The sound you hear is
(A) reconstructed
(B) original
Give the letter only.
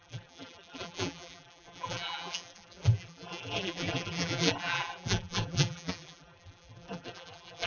A